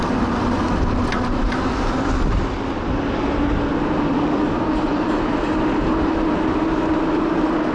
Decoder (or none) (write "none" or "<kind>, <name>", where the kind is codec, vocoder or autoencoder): none